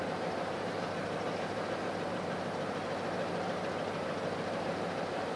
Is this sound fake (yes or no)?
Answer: yes